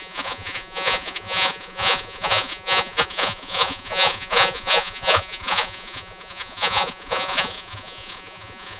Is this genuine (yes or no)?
no